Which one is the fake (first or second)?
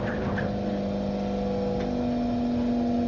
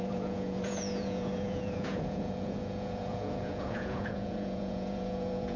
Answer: second